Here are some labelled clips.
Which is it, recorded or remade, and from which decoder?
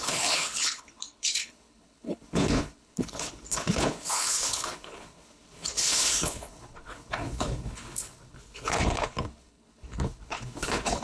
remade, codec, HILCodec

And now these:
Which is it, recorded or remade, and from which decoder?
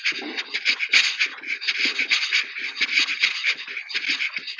recorded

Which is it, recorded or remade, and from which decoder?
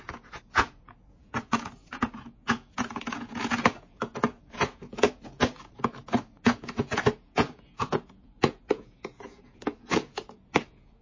remade, vocoder, Vocos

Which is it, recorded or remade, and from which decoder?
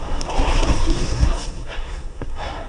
remade, codec, SNAC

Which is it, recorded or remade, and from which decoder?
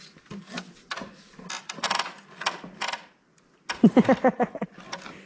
recorded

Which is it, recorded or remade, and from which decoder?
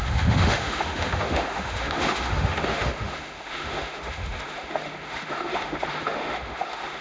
remade, autoencoder, DAC-VAE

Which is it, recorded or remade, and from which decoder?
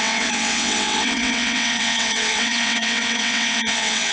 remade, vocoder, WaveNeXt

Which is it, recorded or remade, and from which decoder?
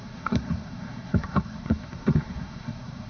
remade, codec, SNAC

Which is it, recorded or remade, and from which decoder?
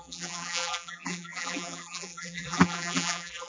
remade, vocoder, BigVGAN v2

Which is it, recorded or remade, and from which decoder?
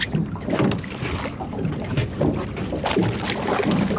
recorded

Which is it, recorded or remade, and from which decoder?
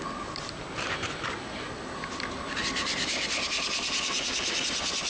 recorded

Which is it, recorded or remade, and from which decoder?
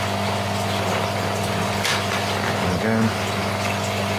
recorded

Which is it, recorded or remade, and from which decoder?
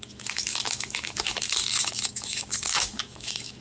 remade, autoencoder, DAC-VAE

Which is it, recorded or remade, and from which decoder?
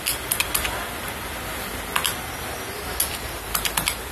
recorded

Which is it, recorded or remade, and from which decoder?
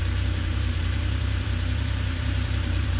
remade, vocoder, BigVGAN v2